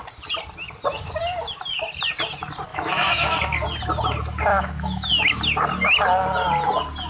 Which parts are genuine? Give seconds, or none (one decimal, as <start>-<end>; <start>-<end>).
0.0-2.7; 3.4-4.5; 5.1-7.1